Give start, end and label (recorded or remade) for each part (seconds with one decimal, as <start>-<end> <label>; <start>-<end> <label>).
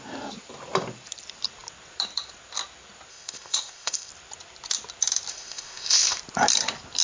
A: 0.0-3.1 recorded; 3.1-4.1 remade; 4.1-5.3 recorded; 5.3-6.2 remade; 6.2-7.0 recorded